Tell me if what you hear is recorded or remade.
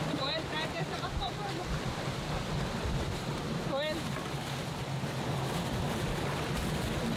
recorded